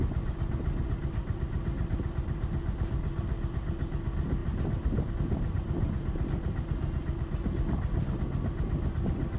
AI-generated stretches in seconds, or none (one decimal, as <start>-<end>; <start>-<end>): none

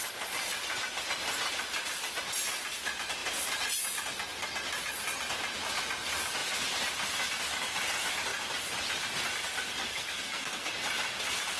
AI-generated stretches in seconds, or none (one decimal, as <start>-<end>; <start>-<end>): 9.9-10.7

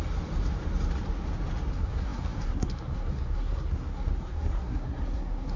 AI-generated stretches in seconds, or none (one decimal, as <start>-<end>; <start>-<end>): 1.7-5.6

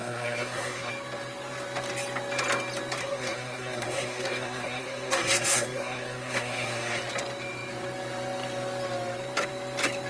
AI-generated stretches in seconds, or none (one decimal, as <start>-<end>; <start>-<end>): 0.0-0.9; 3.0-7.0

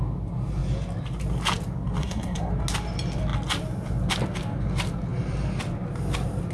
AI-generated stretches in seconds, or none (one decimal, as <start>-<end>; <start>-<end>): 2.0-2.5

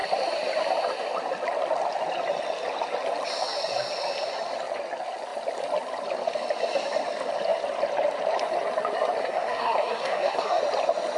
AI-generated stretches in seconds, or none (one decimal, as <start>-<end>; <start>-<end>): 9.2-10.6

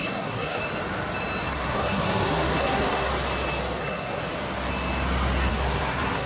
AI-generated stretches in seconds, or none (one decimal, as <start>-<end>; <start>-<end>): 0.0-0.6; 1.5-3.1; 3.8-4.2; 5.5-6.3

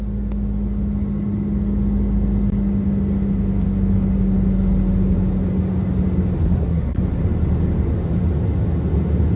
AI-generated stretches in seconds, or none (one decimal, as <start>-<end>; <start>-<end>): 6.4-7.0